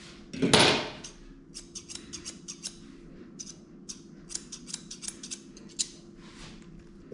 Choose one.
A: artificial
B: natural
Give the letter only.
B